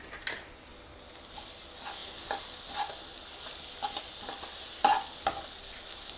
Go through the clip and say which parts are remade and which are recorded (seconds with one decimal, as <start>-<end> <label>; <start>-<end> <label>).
0.0-6.2 recorded